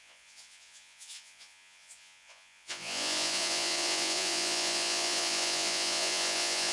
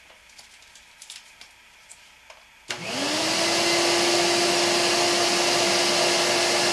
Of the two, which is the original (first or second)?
second